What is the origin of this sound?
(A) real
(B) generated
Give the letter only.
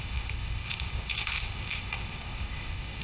B